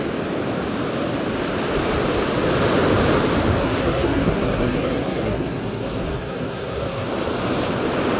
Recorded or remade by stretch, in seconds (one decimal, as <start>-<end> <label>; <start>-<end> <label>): 0.0-3.6 recorded; 3.6-7.1 remade; 7.1-8.2 recorded